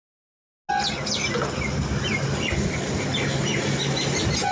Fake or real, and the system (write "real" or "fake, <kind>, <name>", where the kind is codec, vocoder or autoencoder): real